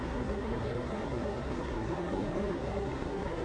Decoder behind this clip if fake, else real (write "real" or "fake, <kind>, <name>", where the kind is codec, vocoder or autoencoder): fake, codec, SNAC